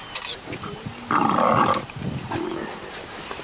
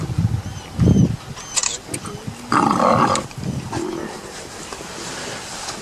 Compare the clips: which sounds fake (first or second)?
first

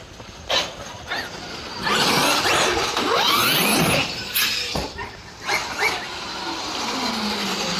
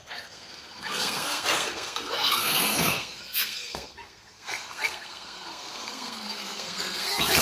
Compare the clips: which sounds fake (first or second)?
second